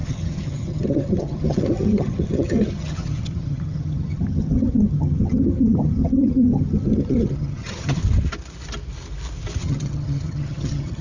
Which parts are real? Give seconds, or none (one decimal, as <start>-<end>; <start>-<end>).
8.0-9.6